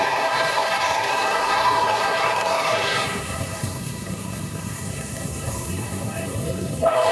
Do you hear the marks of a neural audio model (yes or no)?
yes